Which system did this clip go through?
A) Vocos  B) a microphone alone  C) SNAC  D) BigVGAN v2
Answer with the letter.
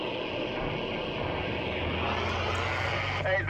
B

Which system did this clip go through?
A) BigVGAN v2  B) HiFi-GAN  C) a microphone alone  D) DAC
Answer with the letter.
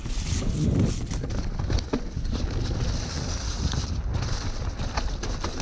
C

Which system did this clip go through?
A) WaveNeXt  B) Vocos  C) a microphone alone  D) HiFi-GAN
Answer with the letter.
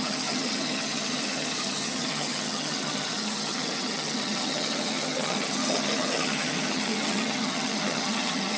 D